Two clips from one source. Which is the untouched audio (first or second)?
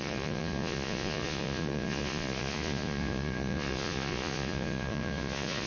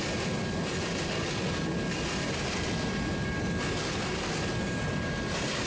second